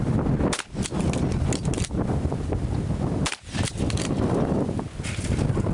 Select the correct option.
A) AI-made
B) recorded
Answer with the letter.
B